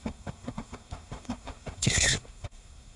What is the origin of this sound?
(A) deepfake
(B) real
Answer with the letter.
A